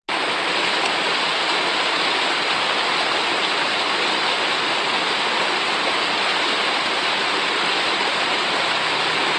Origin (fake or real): real